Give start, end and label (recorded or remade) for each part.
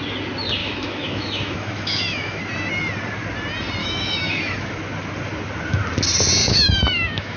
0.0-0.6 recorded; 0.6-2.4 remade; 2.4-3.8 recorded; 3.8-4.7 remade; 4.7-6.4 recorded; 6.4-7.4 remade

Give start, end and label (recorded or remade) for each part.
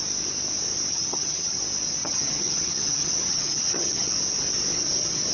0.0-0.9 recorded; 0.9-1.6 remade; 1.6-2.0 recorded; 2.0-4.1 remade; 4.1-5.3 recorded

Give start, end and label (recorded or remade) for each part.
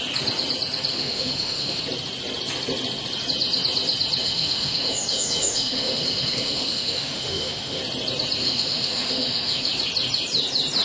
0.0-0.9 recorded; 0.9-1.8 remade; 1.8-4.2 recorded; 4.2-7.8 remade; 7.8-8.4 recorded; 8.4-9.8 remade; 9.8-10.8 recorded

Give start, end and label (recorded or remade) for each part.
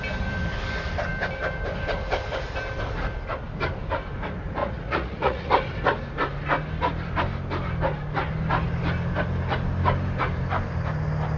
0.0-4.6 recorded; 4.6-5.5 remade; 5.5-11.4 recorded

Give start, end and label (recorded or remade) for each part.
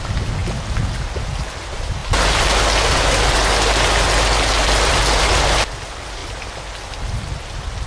0.0-7.9 recorded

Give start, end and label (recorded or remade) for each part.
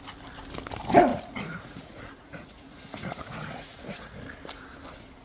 0.0-1.1 recorded; 1.1-4.2 remade; 4.2-5.2 recorded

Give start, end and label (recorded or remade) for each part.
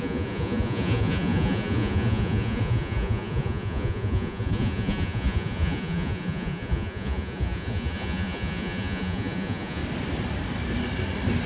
0.0-9.8 remade; 9.8-11.5 recorded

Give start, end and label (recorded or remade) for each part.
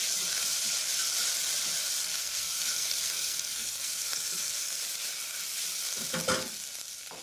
0.0-2.0 recorded; 2.0-4.8 remade; 4.8-7.2 recorded